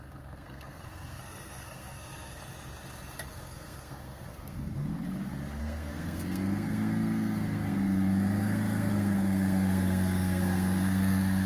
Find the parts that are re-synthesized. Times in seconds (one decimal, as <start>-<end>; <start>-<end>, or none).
0.0-2.4; 3.3-4.9; 5.6-11.5